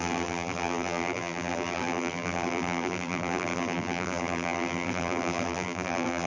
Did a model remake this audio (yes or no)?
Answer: yes